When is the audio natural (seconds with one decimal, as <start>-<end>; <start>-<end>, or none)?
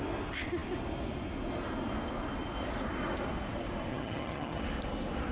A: 0.0-3.9; 4.6-5.3